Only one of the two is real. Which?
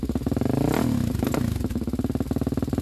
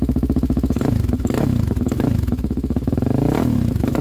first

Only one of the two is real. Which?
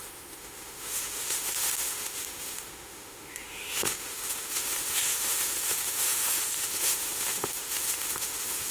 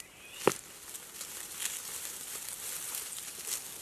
second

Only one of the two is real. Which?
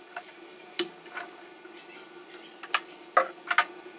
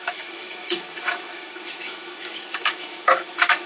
first